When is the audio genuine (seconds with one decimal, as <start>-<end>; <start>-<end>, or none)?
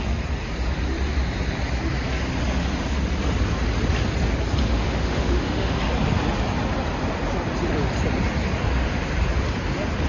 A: 0.0-4.6; 5.8-10.1